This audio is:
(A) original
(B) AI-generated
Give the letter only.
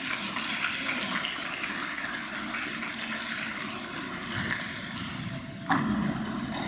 A